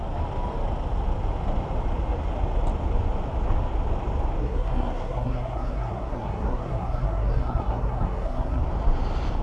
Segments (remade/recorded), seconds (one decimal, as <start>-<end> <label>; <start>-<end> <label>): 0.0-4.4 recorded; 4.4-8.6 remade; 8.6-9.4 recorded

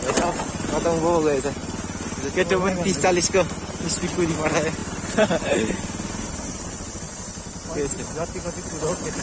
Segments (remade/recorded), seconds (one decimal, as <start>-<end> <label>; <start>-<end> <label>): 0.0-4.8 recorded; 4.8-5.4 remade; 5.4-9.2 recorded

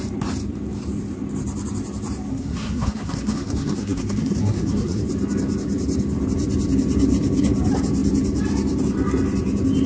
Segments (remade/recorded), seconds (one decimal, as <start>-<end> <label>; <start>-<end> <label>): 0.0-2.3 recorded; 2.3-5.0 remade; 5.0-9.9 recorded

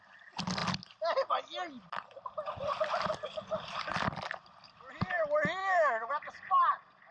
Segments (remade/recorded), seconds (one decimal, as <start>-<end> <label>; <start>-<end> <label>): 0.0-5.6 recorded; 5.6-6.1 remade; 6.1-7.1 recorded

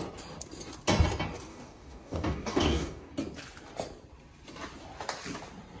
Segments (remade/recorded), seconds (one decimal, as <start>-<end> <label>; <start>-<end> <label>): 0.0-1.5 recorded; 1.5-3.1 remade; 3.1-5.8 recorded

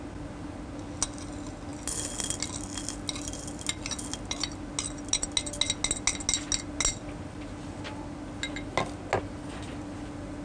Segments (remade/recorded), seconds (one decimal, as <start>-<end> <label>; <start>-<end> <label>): 0.0-10.4 recorded

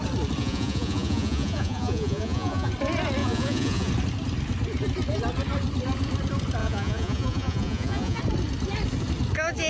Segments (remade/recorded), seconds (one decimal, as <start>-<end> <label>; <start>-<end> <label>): 0.0-0.4 recorded; 0.4-2.7 remade; 2.7-3.2 recorded; 3.2-3.9 remade; 3.9-6.6 recorded; 6.6-8.2 remade; 8.2-9.7 recorded

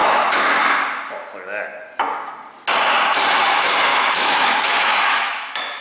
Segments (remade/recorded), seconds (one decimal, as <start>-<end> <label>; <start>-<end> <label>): 0.0-0.6 remade; 0.6-3.9 recorded; 3.9-5.8 remade